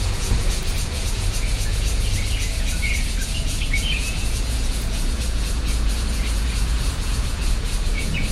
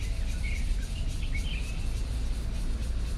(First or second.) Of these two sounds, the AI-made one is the first